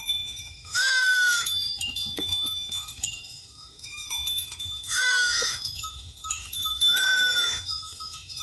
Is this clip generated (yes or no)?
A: yes